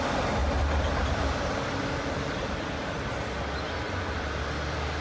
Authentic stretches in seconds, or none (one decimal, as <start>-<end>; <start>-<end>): 0.0-0.4; 3.4-5.0

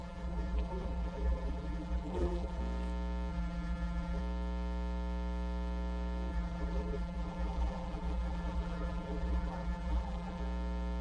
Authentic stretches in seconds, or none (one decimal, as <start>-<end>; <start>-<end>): 2.6-3.3; 4.2-6.3; 10.4-11.0

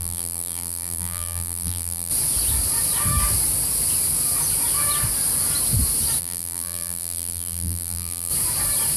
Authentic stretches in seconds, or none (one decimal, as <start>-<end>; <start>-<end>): 2.1-6.2; 8.3-9.0

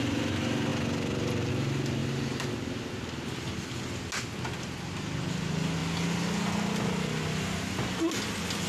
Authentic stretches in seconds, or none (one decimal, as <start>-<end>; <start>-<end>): 0.0-2.0; 2.9-8.7